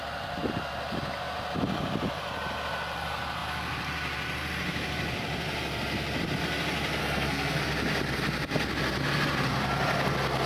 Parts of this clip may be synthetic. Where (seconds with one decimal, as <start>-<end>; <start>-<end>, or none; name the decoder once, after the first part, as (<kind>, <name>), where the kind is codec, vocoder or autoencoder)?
7.0-7.6 (codec, SNAC)

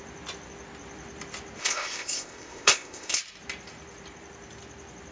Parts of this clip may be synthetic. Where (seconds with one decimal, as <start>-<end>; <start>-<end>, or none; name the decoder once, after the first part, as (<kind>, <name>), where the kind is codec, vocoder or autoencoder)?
1.6-3.2 (codec, ZipCodec)

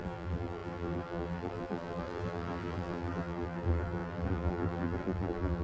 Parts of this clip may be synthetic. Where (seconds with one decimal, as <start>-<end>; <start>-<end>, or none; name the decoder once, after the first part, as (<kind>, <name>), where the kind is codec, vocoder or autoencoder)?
0.0-5.6 (vocoder, BigVGAN v2)

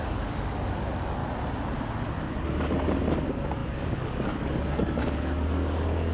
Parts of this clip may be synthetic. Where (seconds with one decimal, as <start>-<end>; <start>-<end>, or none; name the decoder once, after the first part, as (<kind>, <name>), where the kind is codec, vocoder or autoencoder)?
0.0-1.2 (codec, DAC); 2.1-6.1